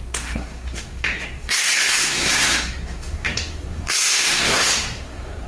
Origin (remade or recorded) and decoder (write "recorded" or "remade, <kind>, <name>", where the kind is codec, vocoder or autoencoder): remade, codec, SNAC